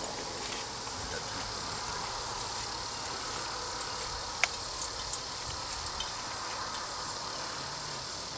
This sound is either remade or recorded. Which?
recorded